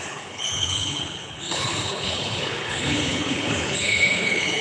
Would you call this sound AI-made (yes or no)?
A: yes